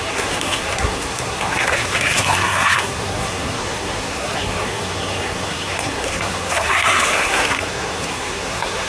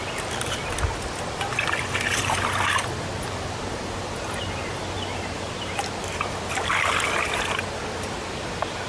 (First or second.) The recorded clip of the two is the second